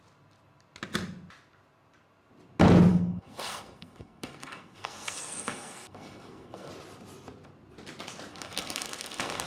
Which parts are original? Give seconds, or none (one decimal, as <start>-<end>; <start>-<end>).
0.0-2.9; 6.7-8.3